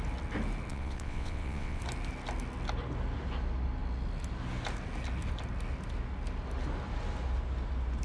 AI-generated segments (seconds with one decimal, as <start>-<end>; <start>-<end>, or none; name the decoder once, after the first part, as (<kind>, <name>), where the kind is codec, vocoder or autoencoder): 0.7-1.8 (vocoder, WaveNeXt)